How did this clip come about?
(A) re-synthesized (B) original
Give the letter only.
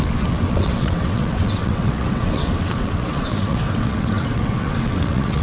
A